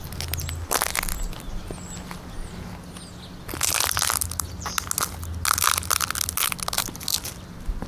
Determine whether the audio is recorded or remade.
recorded